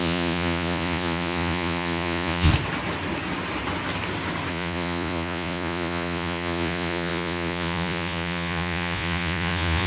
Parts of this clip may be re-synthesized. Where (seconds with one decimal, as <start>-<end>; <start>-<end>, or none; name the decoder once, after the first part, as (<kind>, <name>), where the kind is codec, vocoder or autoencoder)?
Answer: 0.0-2.5 (vocoder, Vocos); 4.5-9.9